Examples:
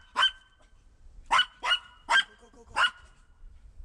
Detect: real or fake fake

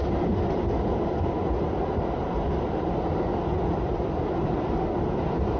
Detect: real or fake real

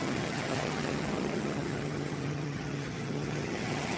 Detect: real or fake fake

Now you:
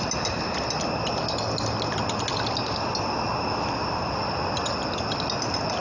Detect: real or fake real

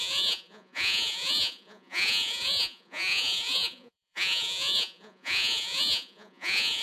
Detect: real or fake fake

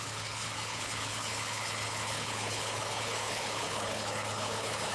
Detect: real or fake fake